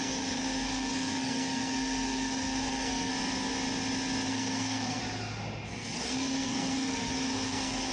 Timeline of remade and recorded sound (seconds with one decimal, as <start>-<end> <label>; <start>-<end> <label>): 0.0-3.1 remade; 3.1-4.3 recorded; 4.3-5.0 remade; 5.0-5.7 recorded; 5.7-7.9 remade